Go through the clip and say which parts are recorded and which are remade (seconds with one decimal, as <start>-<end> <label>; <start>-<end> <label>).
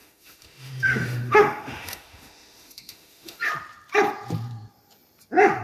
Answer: 0.0-3.4 remade; 3.4-5.6 recorded